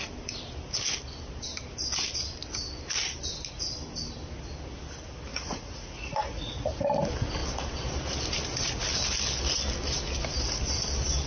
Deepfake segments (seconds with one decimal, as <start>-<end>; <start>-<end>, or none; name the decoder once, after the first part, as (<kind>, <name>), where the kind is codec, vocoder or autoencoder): 5.3-6.9 (vocoder, Vocos)